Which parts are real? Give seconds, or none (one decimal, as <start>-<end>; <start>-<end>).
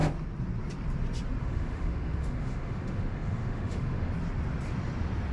0.0-1.4; 4.1-5.3